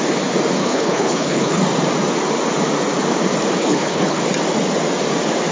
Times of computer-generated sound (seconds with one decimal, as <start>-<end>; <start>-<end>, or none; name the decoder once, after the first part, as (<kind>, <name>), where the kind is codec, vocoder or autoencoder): 0.6-1.6 (codec, HILCodec); 3.6-4.2